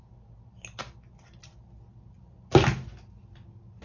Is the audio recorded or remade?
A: recorded